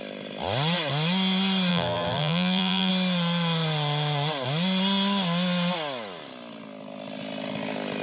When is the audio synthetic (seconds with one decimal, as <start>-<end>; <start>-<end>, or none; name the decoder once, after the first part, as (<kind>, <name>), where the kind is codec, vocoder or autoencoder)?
1.7-2.9 (vocoder, BigVGAN v2)